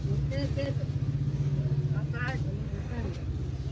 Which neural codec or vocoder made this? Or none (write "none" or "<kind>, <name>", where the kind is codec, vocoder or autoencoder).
none